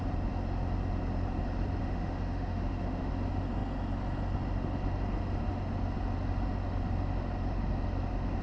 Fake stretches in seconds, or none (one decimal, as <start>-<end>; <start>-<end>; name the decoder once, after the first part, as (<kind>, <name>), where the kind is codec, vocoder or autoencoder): 1.8-3.1 (autoencoder, DAC-VAE)